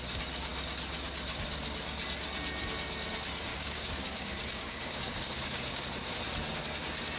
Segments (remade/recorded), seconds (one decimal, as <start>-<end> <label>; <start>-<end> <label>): 0.0-3.5 recorded; 3.5-5.8 remade; 5.8-7.2 recorded